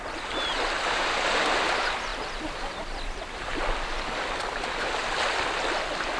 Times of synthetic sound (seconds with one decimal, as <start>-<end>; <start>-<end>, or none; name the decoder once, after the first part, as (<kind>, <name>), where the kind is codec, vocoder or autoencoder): none